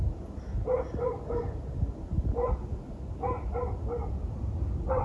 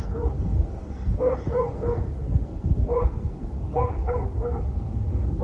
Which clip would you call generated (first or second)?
second